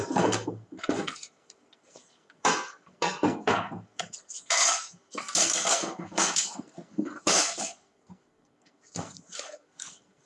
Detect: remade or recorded remade